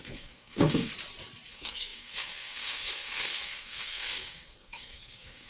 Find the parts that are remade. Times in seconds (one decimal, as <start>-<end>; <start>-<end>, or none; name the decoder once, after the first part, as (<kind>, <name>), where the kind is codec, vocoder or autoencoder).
0.0-0.9 (codec, SNAC); 1.5-5.5